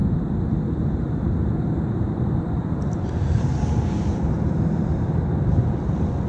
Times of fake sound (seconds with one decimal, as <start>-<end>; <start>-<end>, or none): 0.0-3.1